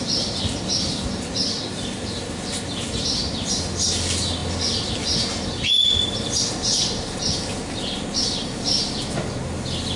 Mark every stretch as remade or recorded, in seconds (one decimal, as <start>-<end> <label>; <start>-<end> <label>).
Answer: 0.0-10.0 recorded